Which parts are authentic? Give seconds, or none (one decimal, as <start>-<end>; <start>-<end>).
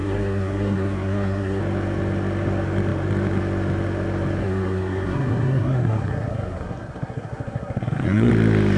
1.6-4.4; 8.3-8.8